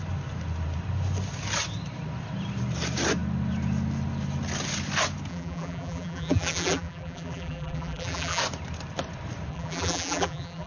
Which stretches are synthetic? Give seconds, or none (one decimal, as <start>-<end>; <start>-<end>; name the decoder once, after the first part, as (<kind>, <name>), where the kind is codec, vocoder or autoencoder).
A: 5.3-8.4 (vocoder, BigVGAN v2); 9.5-10.7